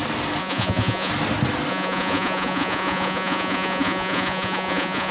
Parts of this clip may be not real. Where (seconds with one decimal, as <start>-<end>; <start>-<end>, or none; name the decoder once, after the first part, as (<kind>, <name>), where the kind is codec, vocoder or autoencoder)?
0.4-1.1 (vocoder, Vocos); 1.7-5.1